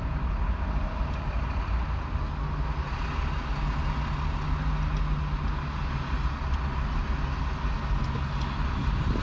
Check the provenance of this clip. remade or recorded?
recorded